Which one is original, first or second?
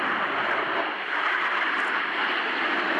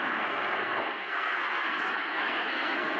first